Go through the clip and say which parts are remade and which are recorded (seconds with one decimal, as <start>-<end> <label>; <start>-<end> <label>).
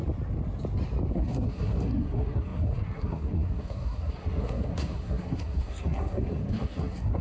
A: 0.0-1.1 recorded; 1.1-7.2 remade